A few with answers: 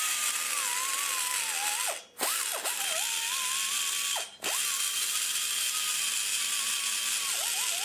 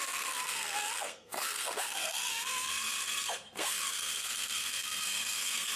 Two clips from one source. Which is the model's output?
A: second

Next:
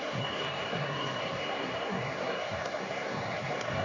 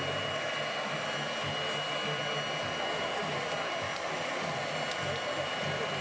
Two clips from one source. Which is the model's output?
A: first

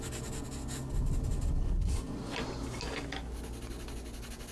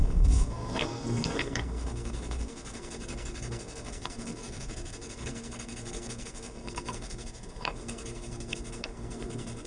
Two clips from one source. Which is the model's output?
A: second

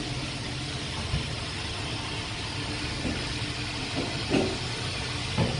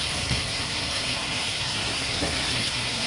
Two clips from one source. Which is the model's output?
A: second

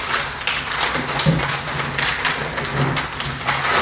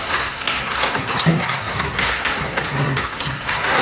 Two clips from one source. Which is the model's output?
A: second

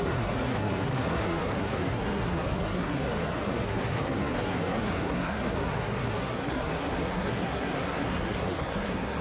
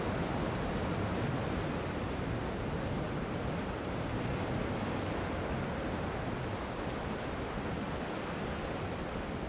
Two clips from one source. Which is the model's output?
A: first